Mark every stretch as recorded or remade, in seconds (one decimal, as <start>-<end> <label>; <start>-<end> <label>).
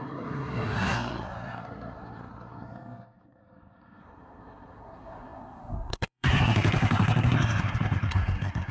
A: 0.0-8.7 remade